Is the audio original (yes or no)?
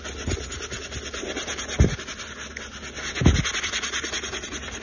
yes